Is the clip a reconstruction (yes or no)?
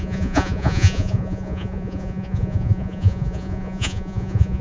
yes